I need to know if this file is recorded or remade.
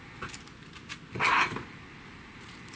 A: remade